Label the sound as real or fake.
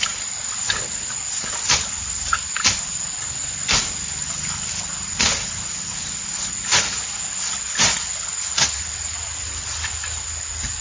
real